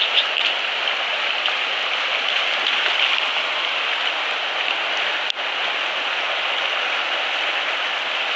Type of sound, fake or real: real